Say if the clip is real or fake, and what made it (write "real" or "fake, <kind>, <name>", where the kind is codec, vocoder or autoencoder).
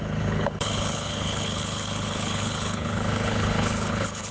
fake, codec, HILCodec